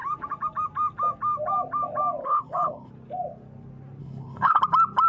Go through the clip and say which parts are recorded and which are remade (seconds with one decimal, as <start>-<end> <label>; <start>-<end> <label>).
0.0-2.2 recorded; 2.2-2.9 remade; 2.9-4.0 recorded; 4.0-4.6 remade; 4.6-5.1 recorded